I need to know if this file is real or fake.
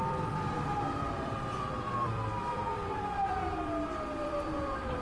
fake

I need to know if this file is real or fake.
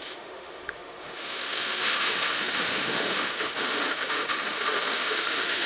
fake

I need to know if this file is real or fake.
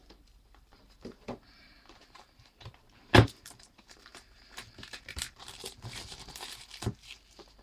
fake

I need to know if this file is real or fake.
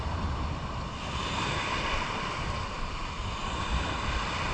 real